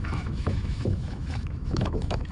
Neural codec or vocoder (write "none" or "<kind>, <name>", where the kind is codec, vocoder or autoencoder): autoencoder, DAC-VAE